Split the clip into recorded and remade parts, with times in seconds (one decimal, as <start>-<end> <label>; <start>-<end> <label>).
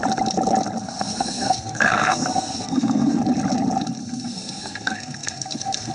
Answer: 0.0-0.8 recorded; 0.8-3.2 remade; 3.2-4.0 recorded; 4.0-5.9 remade